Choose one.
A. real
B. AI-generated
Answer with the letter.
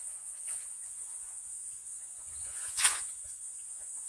B